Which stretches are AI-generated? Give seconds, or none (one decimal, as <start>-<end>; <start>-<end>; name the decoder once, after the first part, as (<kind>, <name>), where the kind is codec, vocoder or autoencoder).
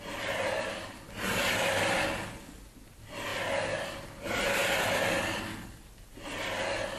none